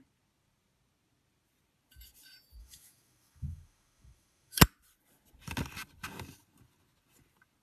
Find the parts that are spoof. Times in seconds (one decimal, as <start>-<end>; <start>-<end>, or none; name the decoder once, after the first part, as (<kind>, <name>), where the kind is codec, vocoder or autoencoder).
2.6-4.6 (autoencoder, DAC-VAE)